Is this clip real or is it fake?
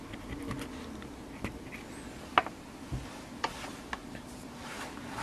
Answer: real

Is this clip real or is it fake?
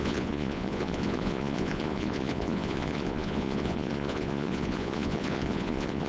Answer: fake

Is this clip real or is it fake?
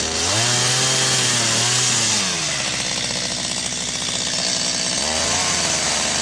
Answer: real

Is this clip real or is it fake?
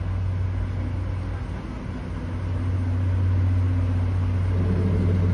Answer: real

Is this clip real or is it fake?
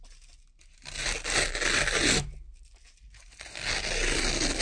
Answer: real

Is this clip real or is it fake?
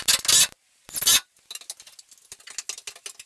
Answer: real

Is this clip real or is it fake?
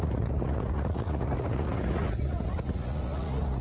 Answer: fake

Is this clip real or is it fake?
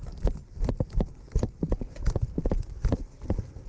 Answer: real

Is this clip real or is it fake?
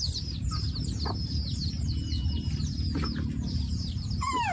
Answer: real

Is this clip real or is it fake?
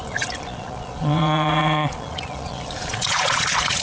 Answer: fake